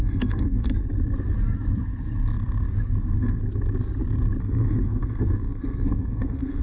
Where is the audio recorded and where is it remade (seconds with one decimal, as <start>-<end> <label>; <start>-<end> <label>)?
0.0-0.7 remade; 0.7-3.0 recorded; 3.0-3.4 remade; 3.4-4.4 recorded; 4.4-6.6 remade